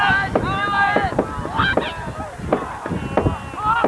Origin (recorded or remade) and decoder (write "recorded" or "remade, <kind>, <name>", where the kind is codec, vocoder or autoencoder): recorded